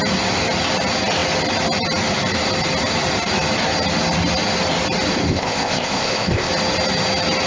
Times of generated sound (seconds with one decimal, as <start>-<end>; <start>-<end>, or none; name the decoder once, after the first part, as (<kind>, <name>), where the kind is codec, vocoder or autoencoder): 5.3-6.5 (codec, ZipCodec)